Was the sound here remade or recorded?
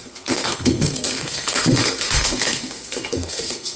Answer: remade